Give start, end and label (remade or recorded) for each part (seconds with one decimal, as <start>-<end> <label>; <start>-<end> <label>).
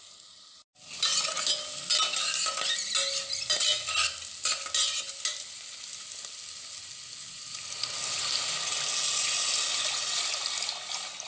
0.0-11.3 recorded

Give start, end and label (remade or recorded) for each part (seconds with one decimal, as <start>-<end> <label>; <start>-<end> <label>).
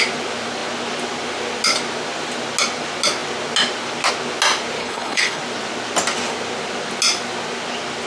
0.0-4.8 recorded; 4.8-5.4 remade; 5.4-8.1 recorded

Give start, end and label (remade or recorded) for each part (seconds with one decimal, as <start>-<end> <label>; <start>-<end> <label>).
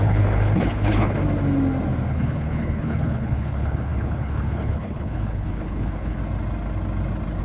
0.0-1.2 remade; 1.2-2.1 recorded; 2.1-6.2 remade; 6.2-7.4 recorded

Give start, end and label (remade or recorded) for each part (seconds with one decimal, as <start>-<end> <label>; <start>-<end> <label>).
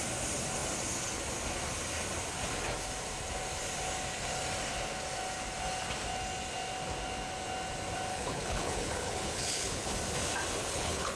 0.0-8.1 recorded; 8.1-9.9 remade; 9.9-10.6 recorded; 10.6-11.2 remade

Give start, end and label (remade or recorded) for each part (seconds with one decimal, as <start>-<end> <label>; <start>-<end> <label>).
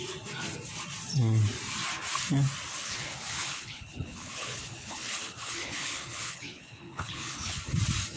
0.0-2.7 recorded; 2.7-7.6 remade; 7.6-8.2 recorded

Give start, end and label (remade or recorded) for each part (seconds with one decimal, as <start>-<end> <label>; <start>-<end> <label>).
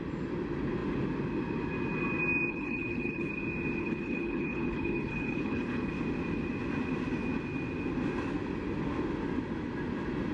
0.0-2.5 recorded; 2.5-3.3 remade; 3.3-3.8 recorded; 3.8-5.9 remade; 5.9-10.3 recorded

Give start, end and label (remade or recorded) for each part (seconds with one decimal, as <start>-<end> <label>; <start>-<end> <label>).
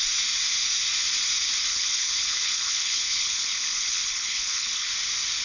0.0-1.7 recorded; 1.7-4.9 remade; 4.9-5.4 recorded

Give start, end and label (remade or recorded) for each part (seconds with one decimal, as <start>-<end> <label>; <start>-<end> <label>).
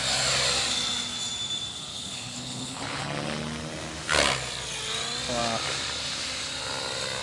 0.0-1.9 recorded; 1.9-3.0 remade; 3.0-7.2 recorded